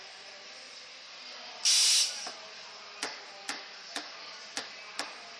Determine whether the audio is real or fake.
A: real